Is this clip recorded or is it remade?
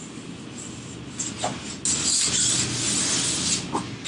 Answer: recorded